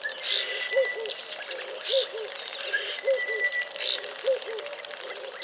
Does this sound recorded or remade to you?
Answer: recorded